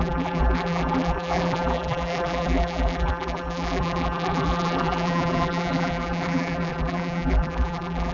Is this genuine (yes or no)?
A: no